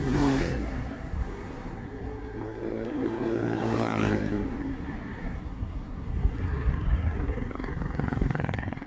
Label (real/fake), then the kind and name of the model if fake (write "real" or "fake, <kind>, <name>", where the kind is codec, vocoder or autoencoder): fake, codec, SNAC